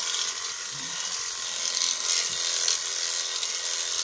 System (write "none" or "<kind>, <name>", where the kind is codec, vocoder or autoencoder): none